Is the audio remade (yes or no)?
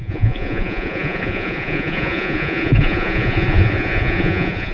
yes